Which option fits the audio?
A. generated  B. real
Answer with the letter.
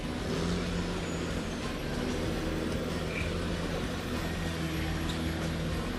B